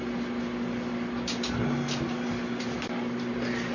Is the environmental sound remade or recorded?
recorded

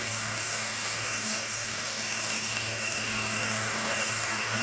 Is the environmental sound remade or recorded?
remade